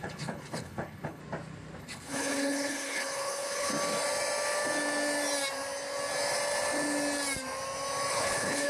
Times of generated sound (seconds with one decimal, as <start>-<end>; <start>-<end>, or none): 0.0-1.2; 1.8-3.7; 8.1-8.7